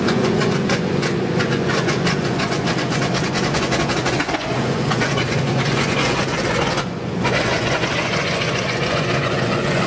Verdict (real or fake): fake